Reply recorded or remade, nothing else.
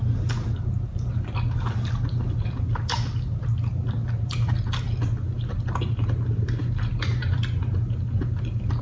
recorded